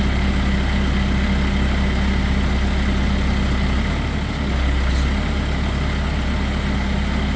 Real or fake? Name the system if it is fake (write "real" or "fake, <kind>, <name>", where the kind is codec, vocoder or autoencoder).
real